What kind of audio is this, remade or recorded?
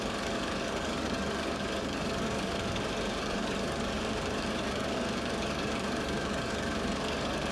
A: remade